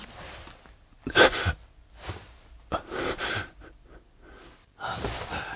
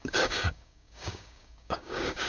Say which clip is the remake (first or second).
second